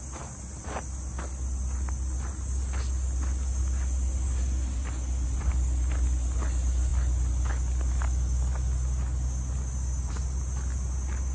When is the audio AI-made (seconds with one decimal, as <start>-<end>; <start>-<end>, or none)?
none